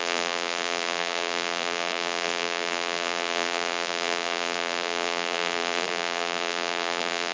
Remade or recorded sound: remade